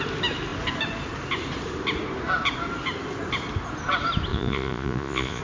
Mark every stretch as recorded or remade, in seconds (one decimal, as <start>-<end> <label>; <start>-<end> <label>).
0.0-4.3 recorded; 4.3-5.4 remade